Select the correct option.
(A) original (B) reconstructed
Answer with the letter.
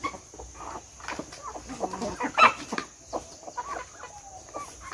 A